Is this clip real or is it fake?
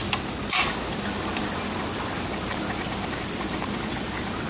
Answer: real